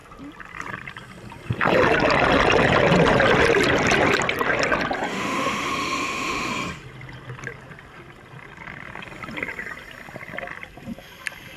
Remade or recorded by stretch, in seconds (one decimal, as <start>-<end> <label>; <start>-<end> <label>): 0.0-5.1 recorded; 5.1-6.5 remade; 6.5-11.6 recorded